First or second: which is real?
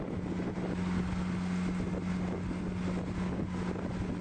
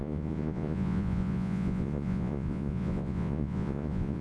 first